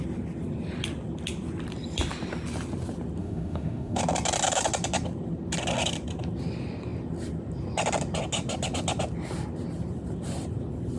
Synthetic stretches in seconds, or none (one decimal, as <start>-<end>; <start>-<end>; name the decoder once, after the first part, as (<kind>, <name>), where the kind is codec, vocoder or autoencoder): 3.2-4.0 (autoencoder, DAC-VAE)